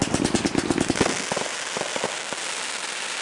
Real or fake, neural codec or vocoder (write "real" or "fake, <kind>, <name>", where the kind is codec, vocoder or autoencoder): real